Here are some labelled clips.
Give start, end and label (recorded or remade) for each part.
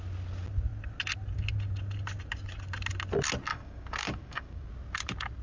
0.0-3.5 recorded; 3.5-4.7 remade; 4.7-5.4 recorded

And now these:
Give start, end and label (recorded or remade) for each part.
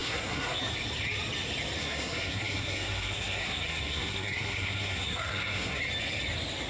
0.0-0.6 remade; 0.6-1.8 recorded; 1.8-5.8 remade; 5.8-6.7 recorded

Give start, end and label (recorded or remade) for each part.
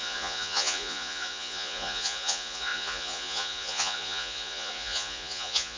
0.0-5.8 remade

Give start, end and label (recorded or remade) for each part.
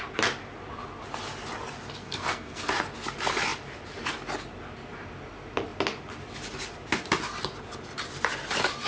0.0-2.0 recorded; 2.0-2.7 remade; 2.7-8.9 recorded